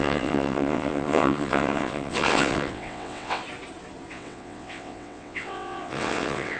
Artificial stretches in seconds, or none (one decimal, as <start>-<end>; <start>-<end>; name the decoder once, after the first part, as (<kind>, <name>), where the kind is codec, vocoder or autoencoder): 0.0-3.4 (vocoder, WaveNeXt); 4.1-6.6